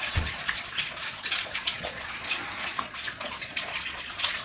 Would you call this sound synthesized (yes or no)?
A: yes